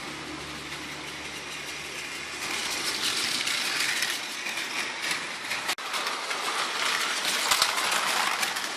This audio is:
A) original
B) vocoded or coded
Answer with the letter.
A